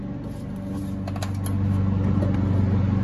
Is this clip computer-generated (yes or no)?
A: no